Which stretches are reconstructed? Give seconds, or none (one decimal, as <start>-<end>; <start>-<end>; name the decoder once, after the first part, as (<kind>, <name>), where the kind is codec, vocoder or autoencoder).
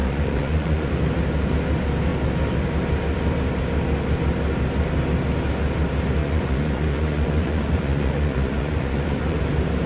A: 0.0-0.9 (vocoder, Vocos); 6.2-9.4